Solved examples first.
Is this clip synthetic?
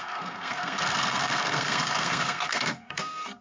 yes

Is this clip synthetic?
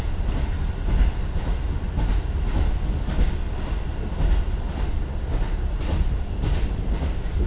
no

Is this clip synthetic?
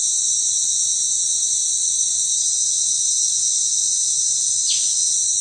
no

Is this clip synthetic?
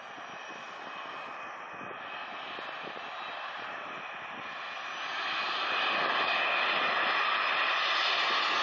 no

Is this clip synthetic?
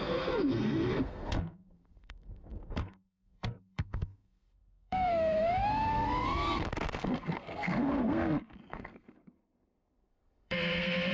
yes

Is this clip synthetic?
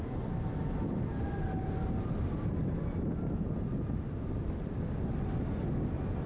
no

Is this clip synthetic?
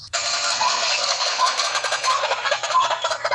yes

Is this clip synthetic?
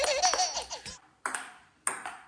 no